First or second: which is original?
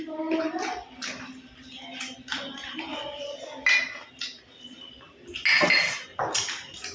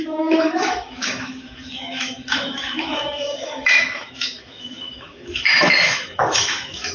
first